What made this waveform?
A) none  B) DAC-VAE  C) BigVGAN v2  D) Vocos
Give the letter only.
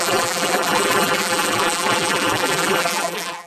C